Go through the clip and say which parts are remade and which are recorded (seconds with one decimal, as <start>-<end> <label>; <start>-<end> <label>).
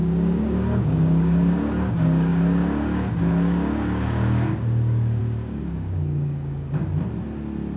0.0-6.8 remade; 6.8-7.8 recorded